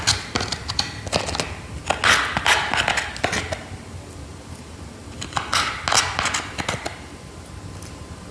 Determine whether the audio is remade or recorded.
recorded